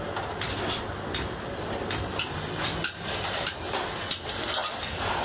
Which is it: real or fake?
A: real